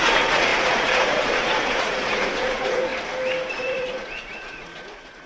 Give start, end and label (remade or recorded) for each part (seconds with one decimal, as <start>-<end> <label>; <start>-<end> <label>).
0.0-2.9 remade; 2.9-3.5 recorded; 3.5-5.3 remade

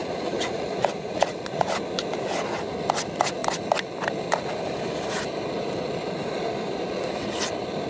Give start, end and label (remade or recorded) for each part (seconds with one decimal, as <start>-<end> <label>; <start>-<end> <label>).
0.0-1.7 remade; 1.7-7.9 recorded

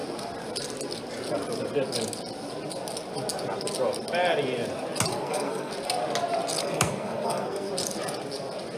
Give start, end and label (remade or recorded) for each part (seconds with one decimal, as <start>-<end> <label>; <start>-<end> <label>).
0.0-5.1 recorded; 5.1-5.7 remade; 5.7-6.6 recorded; 6.6-7.7 remade; 7.7-8.8 recorded

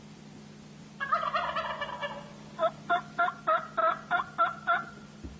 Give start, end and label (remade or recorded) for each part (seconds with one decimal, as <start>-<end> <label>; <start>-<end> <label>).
0.0-5.4 recorded

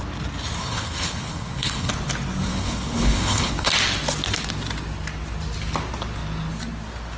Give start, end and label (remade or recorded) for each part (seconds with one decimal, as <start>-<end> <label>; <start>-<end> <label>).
0.0-0.6 recorded; 0.6-1.9 remade; 1.9-2.4 recorded; 2.4-3.7 remade; 3.7-7.2 recorded

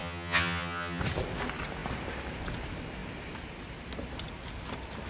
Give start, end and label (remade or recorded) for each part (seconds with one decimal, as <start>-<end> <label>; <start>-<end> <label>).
0.0-1.0 remade; 1.0-5.1 recorded

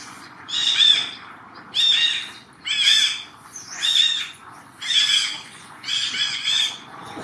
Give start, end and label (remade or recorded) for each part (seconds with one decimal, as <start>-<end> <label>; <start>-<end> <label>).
0.0-1.0 remade; 1.0-3.4 recorded; 3.4-4.4 remade; 4.4-5.4 recorded; 5.4-7.2 remade